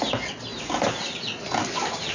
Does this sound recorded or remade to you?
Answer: recorded